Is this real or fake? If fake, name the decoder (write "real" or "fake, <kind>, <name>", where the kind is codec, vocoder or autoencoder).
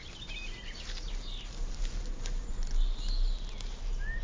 real